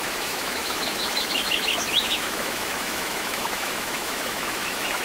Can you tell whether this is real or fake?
fake